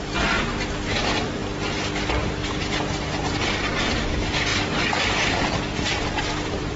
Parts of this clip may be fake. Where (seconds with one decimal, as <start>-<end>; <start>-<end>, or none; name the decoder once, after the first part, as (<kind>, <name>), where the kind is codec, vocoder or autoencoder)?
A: none